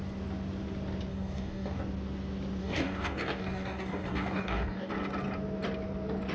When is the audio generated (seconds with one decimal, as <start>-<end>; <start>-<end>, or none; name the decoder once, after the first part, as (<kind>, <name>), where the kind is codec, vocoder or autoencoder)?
1.1-1.8 (codec, DAC); 2.6-4.9